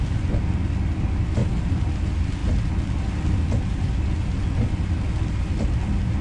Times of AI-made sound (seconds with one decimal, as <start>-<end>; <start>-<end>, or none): none